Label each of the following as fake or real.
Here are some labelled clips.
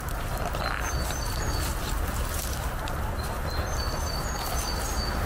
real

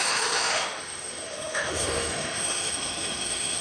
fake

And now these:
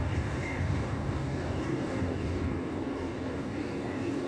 fake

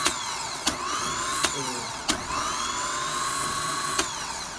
fake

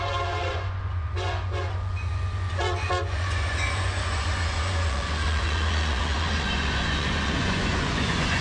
fake